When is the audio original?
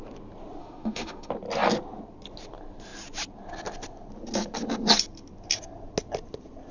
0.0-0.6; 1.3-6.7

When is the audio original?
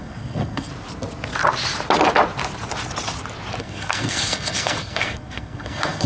0.7-3.6